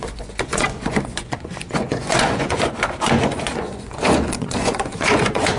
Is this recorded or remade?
remade